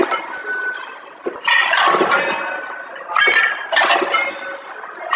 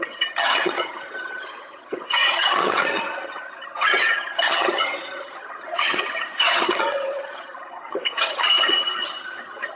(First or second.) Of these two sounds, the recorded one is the first